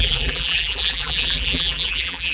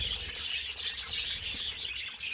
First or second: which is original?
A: second